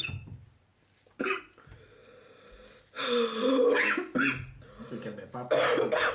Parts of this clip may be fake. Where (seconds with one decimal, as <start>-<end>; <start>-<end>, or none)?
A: none